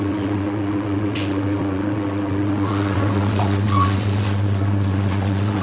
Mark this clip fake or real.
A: fake